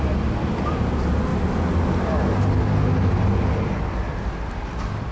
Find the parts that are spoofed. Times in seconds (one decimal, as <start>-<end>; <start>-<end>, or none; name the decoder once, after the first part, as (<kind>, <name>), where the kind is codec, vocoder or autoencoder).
none